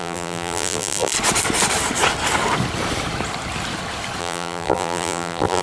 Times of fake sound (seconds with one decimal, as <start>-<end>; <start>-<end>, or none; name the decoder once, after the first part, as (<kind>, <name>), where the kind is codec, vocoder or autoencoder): 0.0-1.1 (vocoder, BigVGAN v2); 4.2-5.6